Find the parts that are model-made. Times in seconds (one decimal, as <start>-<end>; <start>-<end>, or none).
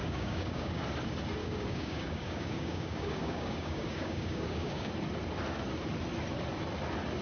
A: 0.0-0.8; 1.4-4.9